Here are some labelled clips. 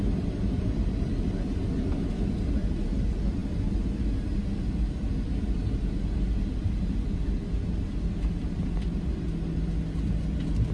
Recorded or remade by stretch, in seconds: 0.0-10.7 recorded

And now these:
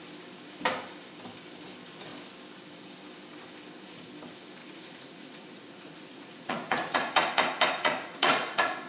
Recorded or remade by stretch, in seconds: 0.0-4.6 recorded; 4.6-8.9 remade

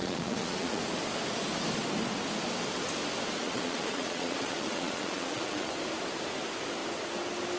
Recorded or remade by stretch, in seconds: 0.0-0.8 remade; 0.8-3.4 recorded; 3.4-5.7 remade; 5.7-7.6 recorded

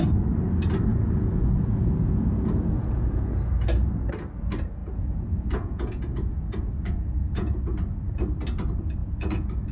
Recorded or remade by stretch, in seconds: 0.0-0.9 recorded; 0.9-3.5 remade; 3.5-4.8 recorded; 4.8-7.6 remade; 7.6-9.0 recorded; 9.0-9.7 remade

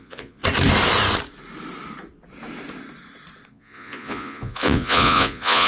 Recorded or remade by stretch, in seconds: 0.0-0.4 remade; 0.4-3.5 recorded; 3.5-5.7 remade

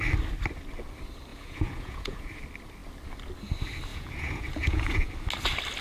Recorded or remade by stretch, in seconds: 0.0-1.3 recorded; 1.3-2.4 remade; 2.4-3.9 recorded; 3.9-5.1 remade; 5.1-5.8 recorded